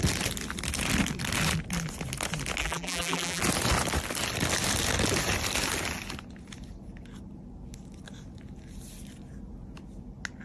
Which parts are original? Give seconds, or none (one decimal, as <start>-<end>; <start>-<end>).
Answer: 0.0-2.6; 3.4-10.4